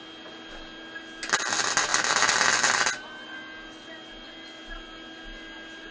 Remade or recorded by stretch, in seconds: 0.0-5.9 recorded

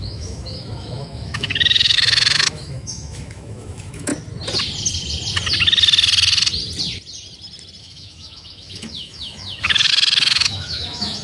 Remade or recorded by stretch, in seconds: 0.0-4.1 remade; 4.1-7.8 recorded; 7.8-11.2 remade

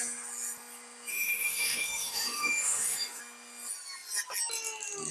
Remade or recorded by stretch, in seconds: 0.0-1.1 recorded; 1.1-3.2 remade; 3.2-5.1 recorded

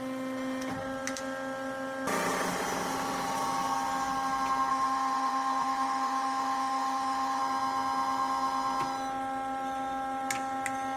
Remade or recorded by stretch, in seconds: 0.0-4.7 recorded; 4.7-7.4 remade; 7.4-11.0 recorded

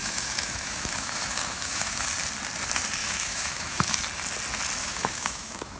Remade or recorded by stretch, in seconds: 0.0-2.1 remade; 2.1-3.0 recorded; 3.0-4.0 remade; 4.0-4.8 recorded; 4.8-5.8 remade